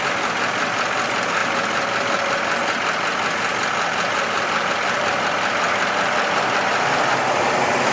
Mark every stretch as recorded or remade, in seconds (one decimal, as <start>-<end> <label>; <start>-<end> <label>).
0.0-7.9 recorded